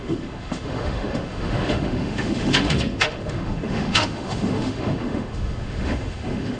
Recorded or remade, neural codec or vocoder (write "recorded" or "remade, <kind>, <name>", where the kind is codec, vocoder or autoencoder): remade, autoencoder, DAC-VAE